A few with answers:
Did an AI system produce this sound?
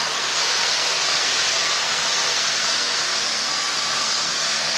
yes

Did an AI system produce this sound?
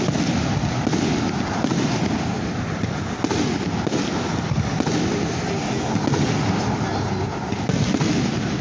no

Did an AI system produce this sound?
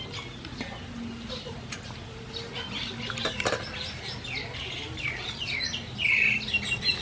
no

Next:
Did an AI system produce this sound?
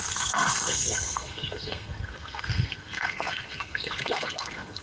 yes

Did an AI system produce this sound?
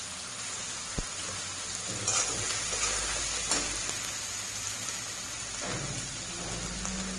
no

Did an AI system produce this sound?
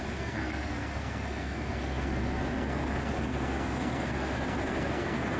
yes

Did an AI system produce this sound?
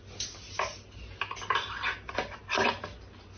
no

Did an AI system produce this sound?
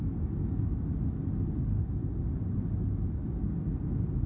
no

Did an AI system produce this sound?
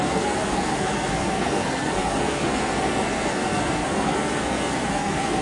yes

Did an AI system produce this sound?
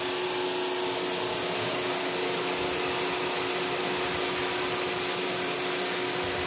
no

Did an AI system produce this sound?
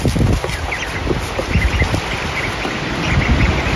no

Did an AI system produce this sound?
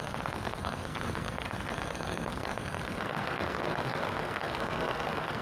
yes